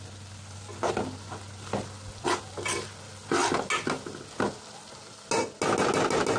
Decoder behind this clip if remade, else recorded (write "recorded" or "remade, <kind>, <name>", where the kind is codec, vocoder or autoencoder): recorded